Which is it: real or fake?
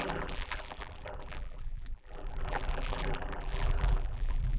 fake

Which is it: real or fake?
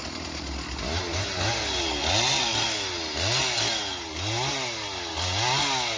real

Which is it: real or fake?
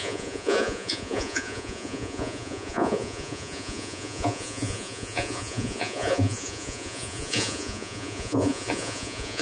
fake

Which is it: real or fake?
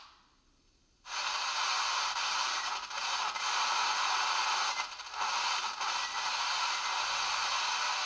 real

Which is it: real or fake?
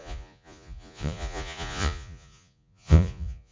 fake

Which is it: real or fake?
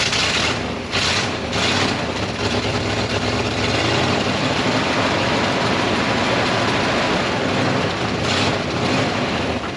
fake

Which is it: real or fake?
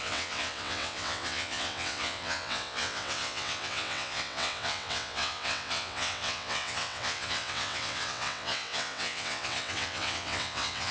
fake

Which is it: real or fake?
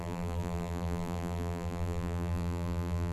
fake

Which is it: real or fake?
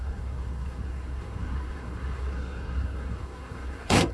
fake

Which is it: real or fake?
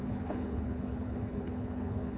fake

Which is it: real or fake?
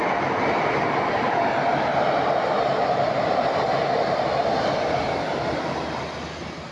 real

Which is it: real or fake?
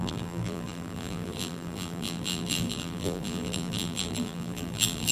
fake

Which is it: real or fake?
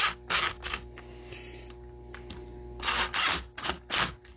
real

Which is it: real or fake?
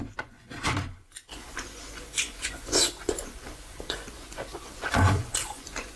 fake